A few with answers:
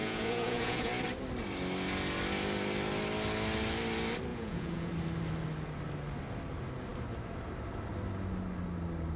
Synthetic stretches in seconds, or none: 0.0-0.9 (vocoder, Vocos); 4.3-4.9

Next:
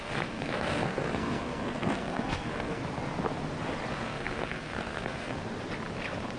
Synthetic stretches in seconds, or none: 0.0-2.8 (codec, SNAC); 3.9-5.4

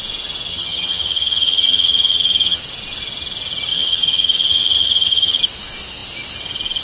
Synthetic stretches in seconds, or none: 0.5-2.6 (vocoder, HiFi-GAN); 3.7-5.4